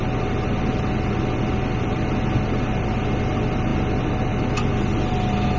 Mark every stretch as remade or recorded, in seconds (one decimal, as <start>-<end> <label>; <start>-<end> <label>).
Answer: 0.0-5.6 recorded